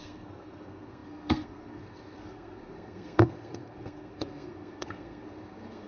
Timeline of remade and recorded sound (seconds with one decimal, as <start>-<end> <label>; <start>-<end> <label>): 0.0-5.9 remade